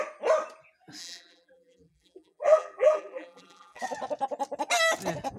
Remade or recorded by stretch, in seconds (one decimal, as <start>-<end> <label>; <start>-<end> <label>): 0.0-1.0 recorded; 1.0-3.8 remade; 3.8-5.4 recorded